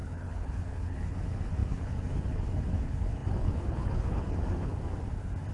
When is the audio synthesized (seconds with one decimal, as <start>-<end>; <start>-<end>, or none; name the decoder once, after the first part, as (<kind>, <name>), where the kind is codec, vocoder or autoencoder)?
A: 0.0-4.7 (codec, HILCodec)